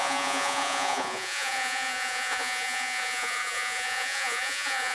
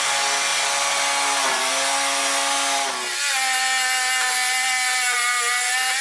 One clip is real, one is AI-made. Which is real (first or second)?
second